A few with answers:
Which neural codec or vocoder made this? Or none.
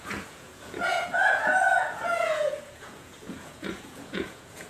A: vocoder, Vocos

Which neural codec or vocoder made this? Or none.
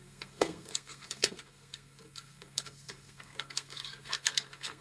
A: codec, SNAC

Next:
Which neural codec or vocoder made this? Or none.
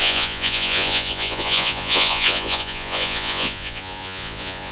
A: vocoder, Vocos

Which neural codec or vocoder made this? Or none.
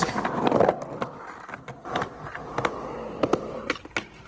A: none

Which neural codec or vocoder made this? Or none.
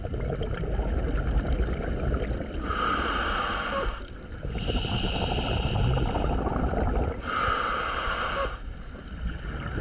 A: none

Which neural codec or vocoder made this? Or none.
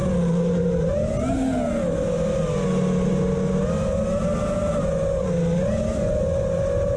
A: none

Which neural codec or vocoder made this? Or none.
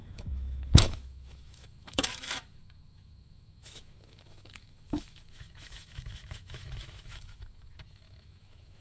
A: autoencoder, DAC-VAE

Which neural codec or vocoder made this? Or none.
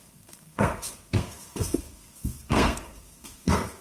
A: codec, SNAC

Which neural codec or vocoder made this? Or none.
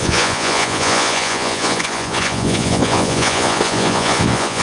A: vocoder, Vocos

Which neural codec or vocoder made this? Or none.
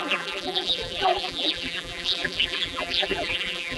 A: vocoder, BigVGAN v2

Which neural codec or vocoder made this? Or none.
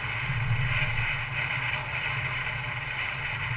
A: none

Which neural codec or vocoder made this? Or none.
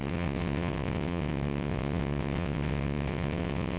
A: vocoder, WaveNeXt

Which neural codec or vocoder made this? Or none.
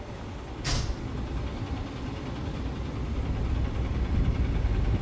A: none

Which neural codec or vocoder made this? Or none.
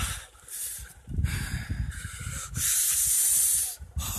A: none